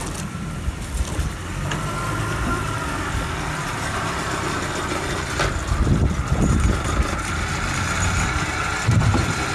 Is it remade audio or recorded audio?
recorded